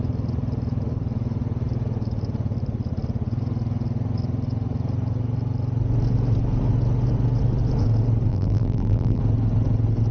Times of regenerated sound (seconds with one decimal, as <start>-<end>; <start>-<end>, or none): 8.3-9.2